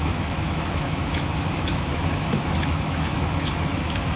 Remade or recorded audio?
remade